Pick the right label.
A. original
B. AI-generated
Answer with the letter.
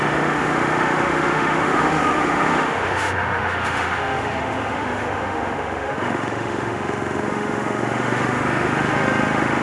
B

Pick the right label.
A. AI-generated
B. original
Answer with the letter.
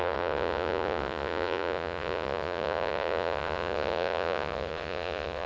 A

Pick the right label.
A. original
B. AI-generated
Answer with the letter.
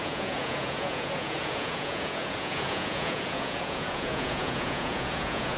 B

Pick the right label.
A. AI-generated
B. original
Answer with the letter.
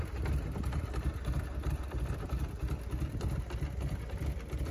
B